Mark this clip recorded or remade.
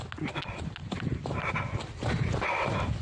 recorded